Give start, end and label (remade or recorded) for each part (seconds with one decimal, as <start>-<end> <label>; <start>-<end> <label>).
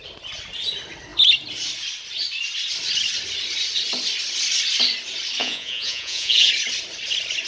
0.0-5.4 recorded; 5.4-6.5 remade; 6.5-7.5 recorded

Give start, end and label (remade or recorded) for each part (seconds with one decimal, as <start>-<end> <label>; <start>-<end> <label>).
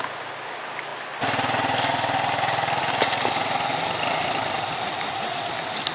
0.0-5.9 recorded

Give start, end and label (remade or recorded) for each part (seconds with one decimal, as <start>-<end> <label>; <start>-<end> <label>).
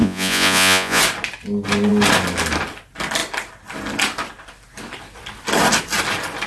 0.0-1.0 remade; 1.0-6.5 recorded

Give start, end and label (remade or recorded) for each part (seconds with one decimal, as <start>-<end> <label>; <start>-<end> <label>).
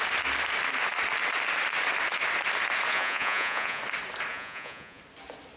0.0-2.9 recorded; 2.9-3.8 remade; 3.8-4.3 recorded; 4.3-5.0 remade; 5.0-5.6 recorded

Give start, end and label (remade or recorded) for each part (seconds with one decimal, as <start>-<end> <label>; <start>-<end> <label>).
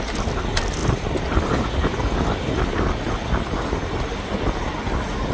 0.0-5.3 recorded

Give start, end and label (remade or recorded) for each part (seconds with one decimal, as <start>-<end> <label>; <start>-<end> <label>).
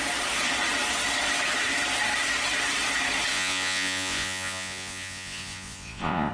0.0-3.3 recorded; 3.3-6.3 remade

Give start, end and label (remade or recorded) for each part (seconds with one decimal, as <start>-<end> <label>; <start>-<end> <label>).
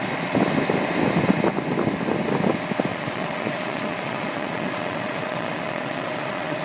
0.0-2.9 recorded; 2.9-6.6 remade